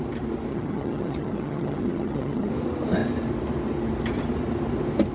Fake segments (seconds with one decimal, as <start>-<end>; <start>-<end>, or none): 0.5-2.5

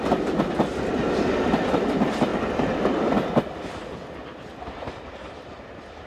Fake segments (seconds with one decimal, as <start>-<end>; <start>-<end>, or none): none

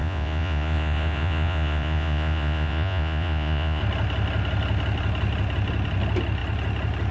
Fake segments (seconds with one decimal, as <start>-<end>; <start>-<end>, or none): 0.0-3.8